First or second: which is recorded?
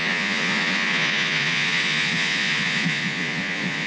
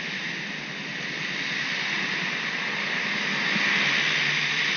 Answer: second